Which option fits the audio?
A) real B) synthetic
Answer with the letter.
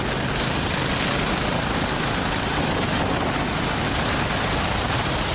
A